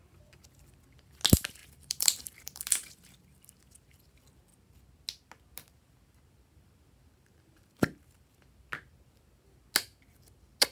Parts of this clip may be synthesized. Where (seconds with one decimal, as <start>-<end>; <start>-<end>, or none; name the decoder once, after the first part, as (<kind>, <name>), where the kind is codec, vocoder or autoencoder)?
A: 1.6-3.6 (vocoder, BigVGAN v2)